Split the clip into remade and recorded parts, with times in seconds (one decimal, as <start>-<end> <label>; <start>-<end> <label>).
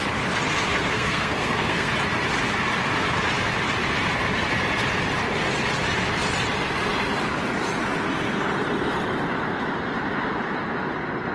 0.0-0.7 recorded; 0.7-1.9 remade; 1.9-11.3 recorded